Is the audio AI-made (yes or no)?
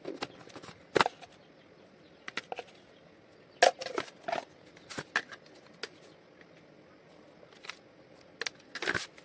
no